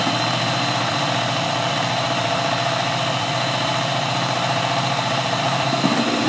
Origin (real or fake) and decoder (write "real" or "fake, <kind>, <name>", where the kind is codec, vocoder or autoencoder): fake, vocoder, BigVGAN v2